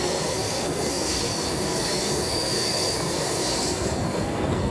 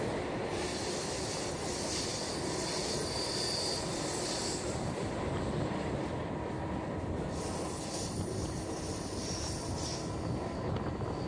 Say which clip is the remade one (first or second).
first